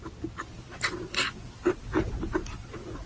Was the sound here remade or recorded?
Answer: recorded